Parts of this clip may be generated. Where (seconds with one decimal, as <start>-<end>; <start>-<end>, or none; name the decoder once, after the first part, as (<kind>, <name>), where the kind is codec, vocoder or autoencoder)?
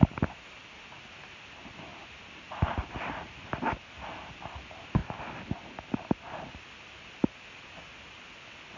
1.9-4.5 (vocoder, BigVGAN v2)